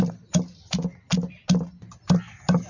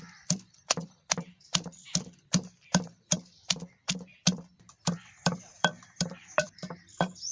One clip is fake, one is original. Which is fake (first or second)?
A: second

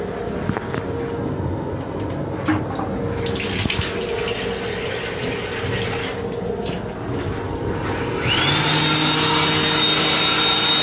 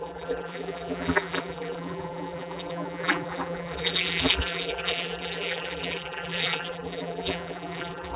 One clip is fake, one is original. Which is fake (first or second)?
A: second